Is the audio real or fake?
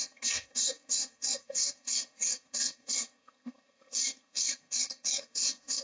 fake